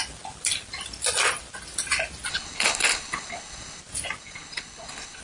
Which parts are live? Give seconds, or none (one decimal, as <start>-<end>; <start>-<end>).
0.0-2.3; 3.8-4.2